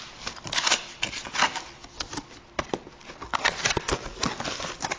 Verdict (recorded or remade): recorded